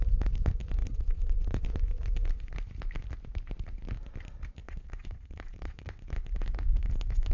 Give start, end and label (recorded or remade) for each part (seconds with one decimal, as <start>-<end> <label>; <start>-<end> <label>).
0.0-0.8 recorded; 0.8-1.6 remade; 1.6-4.6 recorded; 4.6-6.0 remade; 6.0-7.3 recorded